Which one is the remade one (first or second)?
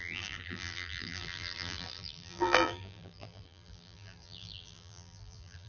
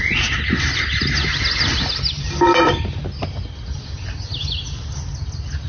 first